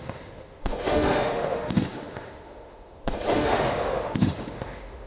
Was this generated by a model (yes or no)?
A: yes